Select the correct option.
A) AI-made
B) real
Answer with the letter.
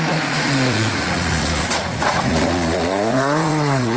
A